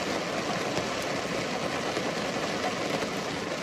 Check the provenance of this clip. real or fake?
real